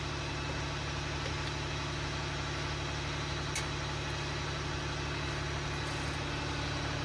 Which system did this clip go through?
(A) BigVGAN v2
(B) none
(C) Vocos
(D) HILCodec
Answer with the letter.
B